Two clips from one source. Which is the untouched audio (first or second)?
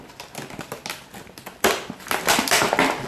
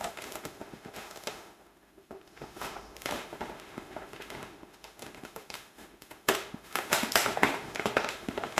first